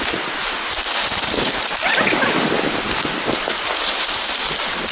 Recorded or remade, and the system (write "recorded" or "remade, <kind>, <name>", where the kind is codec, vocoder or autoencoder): recorded